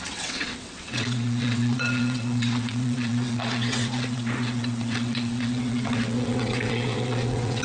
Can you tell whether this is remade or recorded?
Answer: remade